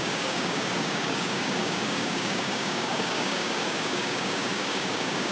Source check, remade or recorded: remade